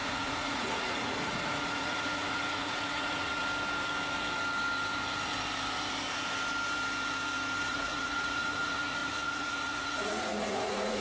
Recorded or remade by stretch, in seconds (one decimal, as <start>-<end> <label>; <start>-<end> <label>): 0.0-3.4 remade; 3.4-7.6 recorded; 7.6-11.0 remade